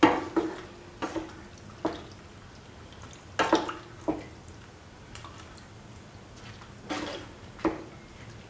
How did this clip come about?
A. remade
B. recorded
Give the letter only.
B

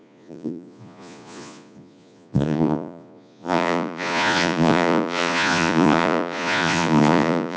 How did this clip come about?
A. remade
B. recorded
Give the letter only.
A